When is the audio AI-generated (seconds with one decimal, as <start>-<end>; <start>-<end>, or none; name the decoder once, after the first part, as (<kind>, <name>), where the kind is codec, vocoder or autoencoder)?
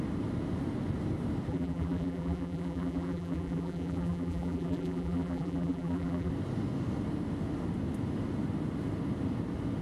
1.5-6.3 (vocoder, BigVGAN v2)